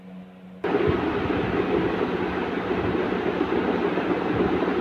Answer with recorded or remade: recorded